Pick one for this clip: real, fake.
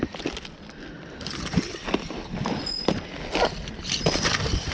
real